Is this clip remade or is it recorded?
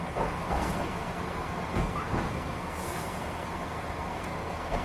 remade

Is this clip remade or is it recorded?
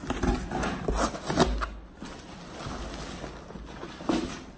recorded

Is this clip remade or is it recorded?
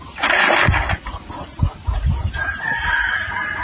recorded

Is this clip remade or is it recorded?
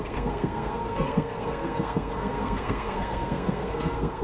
remade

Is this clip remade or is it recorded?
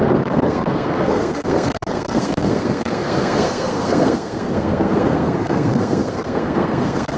remade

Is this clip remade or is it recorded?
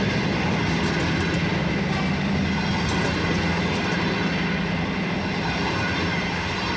recorded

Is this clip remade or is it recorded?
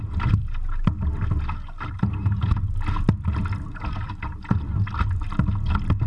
recorded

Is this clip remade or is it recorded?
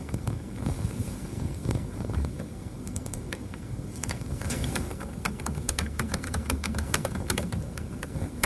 remade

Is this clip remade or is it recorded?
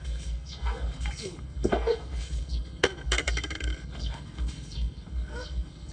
remade